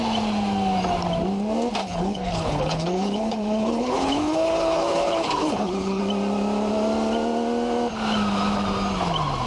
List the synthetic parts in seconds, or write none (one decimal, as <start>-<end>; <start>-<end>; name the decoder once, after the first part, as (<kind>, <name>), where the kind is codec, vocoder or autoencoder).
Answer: 1.8-6.0 (codec, HILCodec)